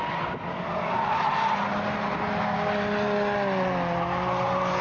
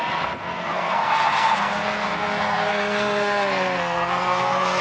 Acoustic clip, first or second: first